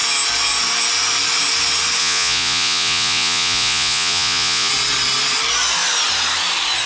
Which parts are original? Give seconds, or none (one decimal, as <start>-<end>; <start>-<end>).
0.0-2.0; 4.7-6.9

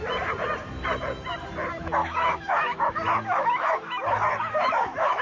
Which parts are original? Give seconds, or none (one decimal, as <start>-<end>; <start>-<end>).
0.0-2.0

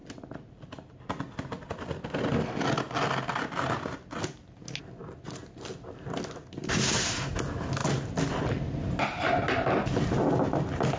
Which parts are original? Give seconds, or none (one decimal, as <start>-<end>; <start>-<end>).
0.0-11.0